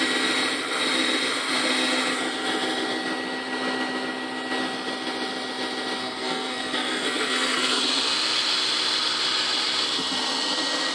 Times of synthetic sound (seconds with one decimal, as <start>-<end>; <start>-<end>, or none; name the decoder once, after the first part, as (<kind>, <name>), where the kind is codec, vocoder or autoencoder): 6.0-7.8 (codec, SNAC)